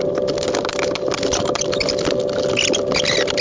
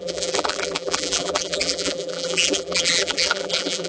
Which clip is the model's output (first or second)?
second